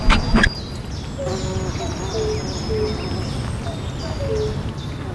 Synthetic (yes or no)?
no